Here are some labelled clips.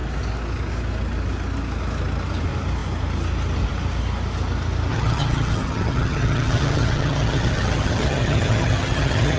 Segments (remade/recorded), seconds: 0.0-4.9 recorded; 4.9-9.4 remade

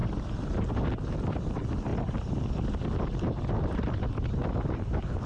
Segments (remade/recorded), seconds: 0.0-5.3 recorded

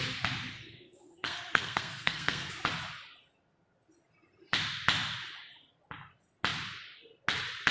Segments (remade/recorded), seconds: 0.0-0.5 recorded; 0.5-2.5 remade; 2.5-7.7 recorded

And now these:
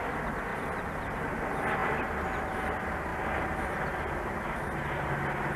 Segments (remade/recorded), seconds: 0.0-0.5 recorded; 0.5-1.3 remade; 1.3-5.6 recorded

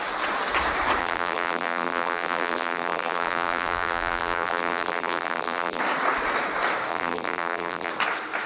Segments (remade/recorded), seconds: 0.0-1.0 recorded; 1.0-5.8 remade; 5.8-6.9 recorded; 6.9-7.9 remade; 7.9-8.5 recorded